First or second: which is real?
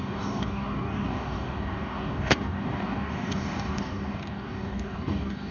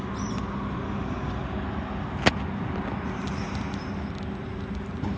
second